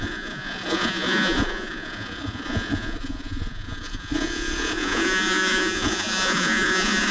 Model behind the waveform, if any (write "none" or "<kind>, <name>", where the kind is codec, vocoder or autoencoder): vocoder, Vocos